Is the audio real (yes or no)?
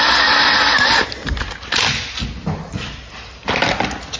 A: yes